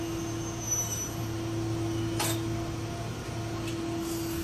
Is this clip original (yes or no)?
yes